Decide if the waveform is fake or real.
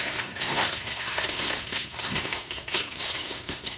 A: fake